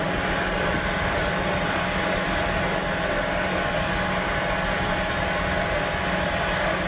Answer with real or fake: real